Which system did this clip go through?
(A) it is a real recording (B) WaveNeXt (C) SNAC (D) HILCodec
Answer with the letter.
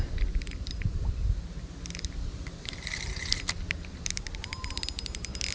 A